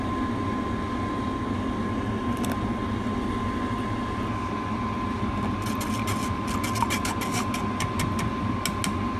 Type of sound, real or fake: real